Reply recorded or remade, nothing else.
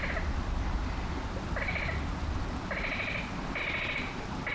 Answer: recorded